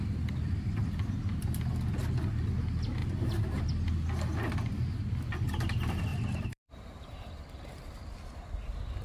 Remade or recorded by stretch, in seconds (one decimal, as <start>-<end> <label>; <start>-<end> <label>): 0.0-3.0 recorded; 3.0-3.7 remade; 3.7-6.1 recorded; 6.1-8.0 remade; 8.0-9.0 recorded